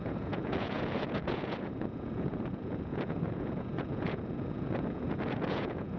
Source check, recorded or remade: remade